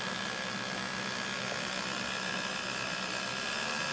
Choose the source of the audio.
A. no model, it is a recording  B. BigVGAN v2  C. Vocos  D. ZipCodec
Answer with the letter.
A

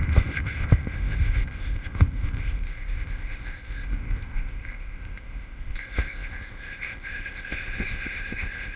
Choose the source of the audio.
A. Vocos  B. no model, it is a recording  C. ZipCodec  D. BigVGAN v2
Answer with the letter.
C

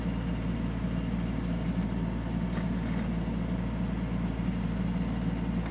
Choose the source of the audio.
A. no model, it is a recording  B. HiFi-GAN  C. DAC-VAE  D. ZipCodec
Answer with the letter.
A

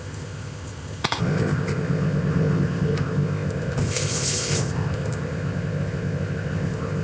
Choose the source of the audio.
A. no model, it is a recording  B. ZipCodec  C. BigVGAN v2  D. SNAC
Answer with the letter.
B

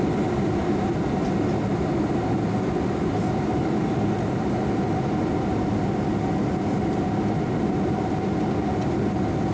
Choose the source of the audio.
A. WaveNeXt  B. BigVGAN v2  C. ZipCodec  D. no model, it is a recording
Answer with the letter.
D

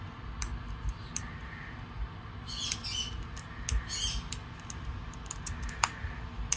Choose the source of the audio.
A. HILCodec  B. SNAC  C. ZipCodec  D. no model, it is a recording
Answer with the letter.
D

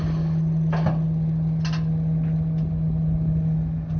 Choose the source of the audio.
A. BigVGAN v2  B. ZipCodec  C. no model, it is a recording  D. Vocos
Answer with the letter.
C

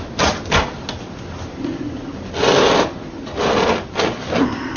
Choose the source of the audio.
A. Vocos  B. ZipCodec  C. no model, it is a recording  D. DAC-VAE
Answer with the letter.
C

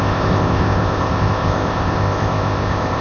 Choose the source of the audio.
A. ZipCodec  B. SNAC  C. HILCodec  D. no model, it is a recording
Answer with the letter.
A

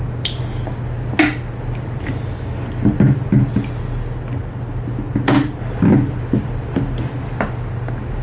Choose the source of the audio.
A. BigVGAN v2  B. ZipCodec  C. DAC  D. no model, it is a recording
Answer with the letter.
D